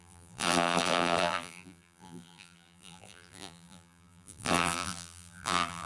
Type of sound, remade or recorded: remade